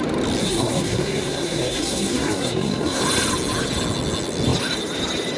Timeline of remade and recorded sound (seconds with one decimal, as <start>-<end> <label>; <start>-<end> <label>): 0.0-0.4 recorded; 0.4-3.0 remade; 3.0-5.4 recorded